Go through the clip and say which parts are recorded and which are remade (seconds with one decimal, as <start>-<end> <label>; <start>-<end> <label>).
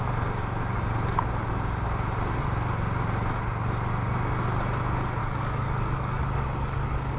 0.0-5.2 recorded; 5.2-7.2 remade